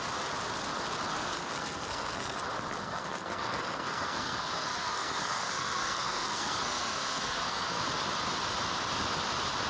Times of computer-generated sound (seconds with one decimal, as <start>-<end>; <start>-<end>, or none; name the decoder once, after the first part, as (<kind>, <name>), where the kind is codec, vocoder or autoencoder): 1.1-2.4 (codec, SNAC); 2.8-7.8